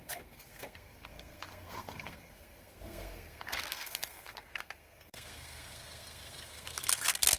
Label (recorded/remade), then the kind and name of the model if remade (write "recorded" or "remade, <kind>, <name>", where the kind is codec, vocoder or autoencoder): remade, codec, SNAC